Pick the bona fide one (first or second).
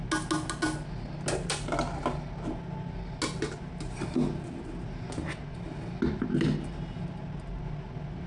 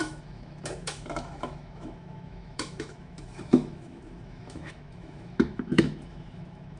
first